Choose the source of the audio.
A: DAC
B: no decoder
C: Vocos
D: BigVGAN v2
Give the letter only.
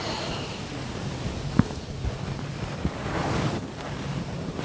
D